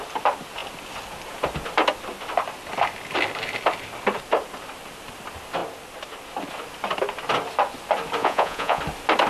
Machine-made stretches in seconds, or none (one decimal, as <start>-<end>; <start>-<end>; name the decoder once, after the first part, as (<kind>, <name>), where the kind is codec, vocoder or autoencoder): 8.2-8.8 (vocoder, Vocos)